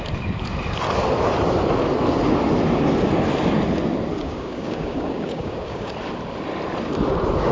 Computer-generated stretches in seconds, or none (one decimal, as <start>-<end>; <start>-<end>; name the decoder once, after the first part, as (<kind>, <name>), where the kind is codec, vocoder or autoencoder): 4.2-5.9 (codec, DAC)